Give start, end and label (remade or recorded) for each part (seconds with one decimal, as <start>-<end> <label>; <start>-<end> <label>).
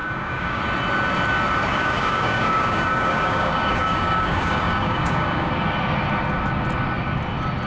0.0-0.6 remade; 0.6-1.7 recorded; 1.7-5.5 remade; 5.5-7.7 recorded